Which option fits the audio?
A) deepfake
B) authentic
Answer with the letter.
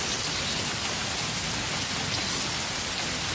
B